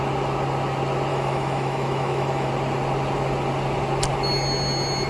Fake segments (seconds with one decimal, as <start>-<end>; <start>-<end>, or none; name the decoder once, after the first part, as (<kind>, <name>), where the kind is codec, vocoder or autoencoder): 1.1-2.5 (autoencoder, DAC-VAE)